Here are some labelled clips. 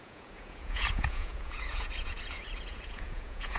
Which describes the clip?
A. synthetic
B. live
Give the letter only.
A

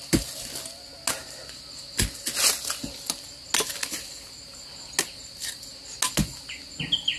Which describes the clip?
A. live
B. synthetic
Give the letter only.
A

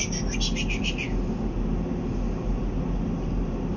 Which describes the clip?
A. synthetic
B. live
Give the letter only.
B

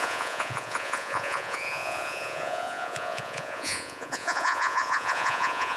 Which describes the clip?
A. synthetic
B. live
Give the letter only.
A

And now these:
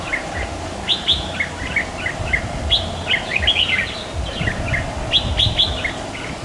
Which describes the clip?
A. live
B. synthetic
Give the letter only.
A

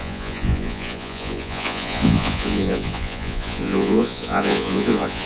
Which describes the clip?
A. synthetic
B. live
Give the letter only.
A